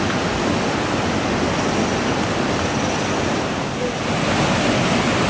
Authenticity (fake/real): real